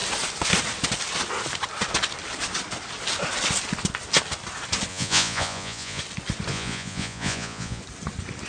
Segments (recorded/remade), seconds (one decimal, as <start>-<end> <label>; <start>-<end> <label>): 0.0-4.9 recorded; 4.9-6.0 remade; 6.0-6.5 recorded; 6.5-7.8 remade; 7.8-8.5 recorded